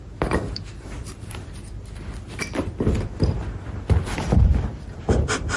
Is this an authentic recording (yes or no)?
no